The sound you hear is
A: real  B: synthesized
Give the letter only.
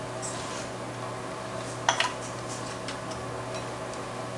A